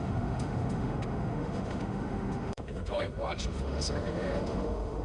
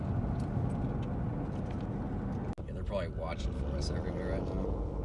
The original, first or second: second